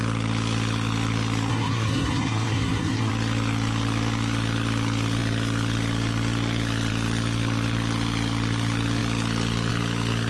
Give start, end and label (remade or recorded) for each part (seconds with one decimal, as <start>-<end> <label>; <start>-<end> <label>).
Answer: 0.0-1.5 recorded; 1.5-3.1 remade; 3.1-10.3 recorded